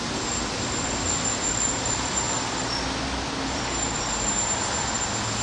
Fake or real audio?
real